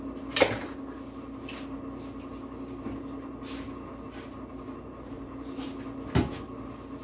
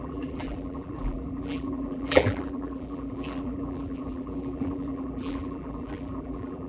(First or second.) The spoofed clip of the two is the second